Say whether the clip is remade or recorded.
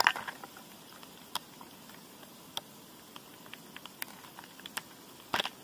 recorded